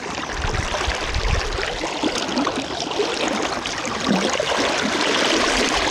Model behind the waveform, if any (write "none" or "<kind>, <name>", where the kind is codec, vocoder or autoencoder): none